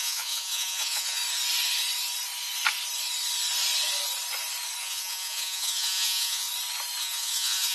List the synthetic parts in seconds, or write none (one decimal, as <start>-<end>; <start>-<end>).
0.0-1.2; 4.8-6.5; 7.0-7.7